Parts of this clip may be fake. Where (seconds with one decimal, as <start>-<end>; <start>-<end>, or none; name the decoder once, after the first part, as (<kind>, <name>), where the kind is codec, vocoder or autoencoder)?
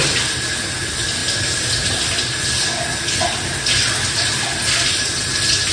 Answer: none